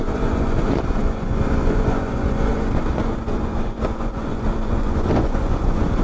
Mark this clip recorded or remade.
remade